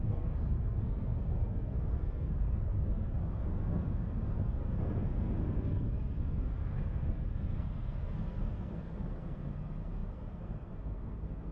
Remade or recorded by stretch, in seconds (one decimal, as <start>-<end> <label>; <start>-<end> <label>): 0.0-11.5 remade